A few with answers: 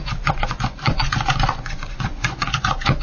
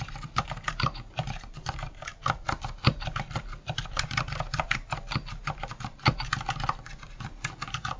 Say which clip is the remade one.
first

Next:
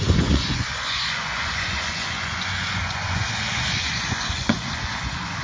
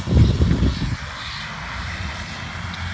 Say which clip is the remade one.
first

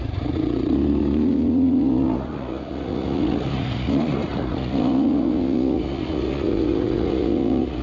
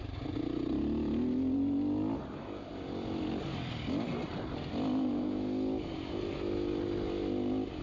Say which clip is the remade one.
first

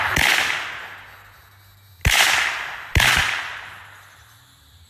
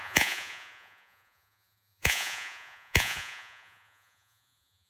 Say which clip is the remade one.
second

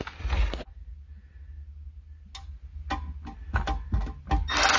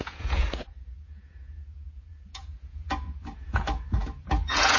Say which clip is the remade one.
second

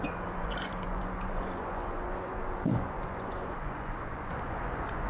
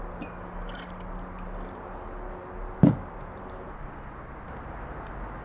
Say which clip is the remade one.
first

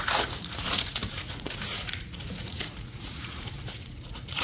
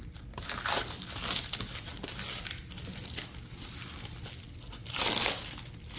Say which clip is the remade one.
first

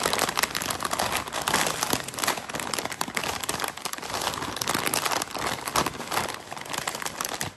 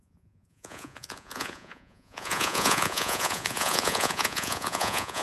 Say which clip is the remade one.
second